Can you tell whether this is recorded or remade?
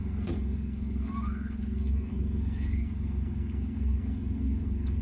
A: remade